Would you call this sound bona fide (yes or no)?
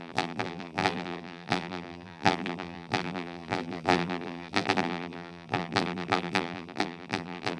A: no